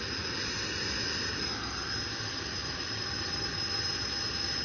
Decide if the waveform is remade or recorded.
recorded